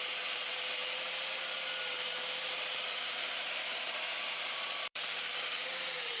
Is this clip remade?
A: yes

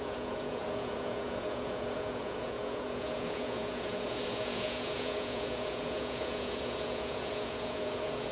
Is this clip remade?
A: yes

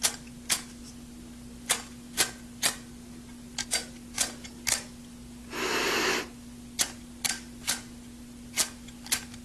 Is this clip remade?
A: no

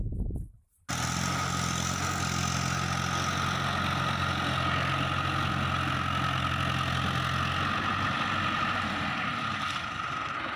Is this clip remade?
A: no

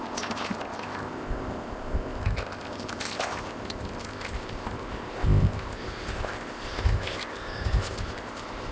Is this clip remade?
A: yes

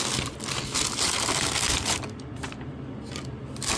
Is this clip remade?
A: no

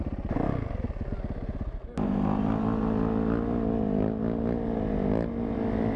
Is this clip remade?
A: no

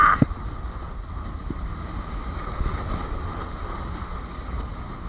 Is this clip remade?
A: no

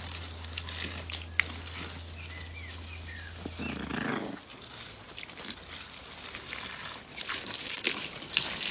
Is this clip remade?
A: no